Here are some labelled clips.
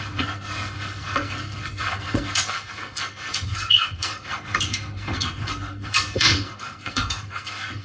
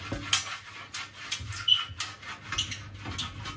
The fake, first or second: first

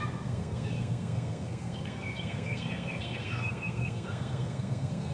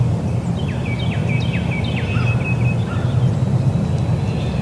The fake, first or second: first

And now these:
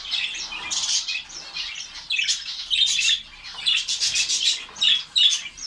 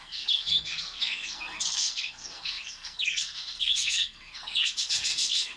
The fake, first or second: second